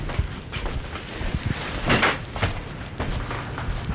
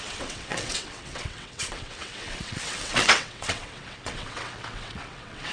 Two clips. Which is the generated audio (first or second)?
second